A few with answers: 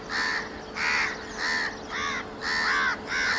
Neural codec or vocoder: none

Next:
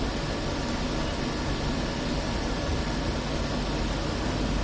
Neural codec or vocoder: none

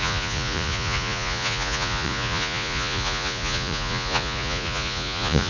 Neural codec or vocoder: vocoder, Vocos